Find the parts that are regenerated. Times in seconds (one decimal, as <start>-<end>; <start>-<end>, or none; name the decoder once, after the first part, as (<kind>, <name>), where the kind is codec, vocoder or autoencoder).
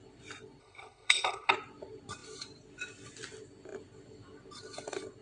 0.6-1.5 (codec, HILCodec)